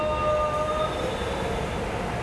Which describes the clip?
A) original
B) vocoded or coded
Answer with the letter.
A